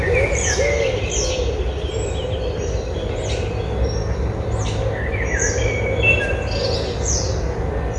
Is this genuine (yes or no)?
yes